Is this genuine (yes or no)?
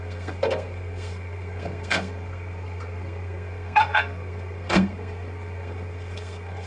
no